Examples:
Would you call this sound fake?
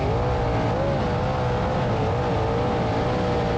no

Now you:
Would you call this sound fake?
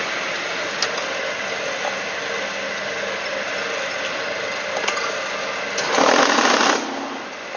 no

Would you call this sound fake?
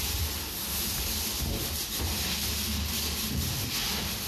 no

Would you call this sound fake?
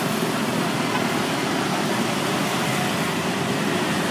no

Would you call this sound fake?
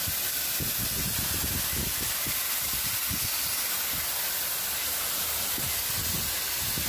no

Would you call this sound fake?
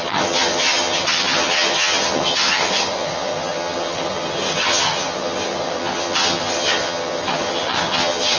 yes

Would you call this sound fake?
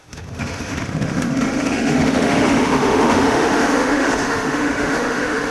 yes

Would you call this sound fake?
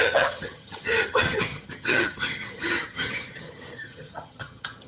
yes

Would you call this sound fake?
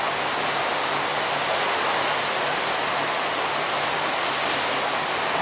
no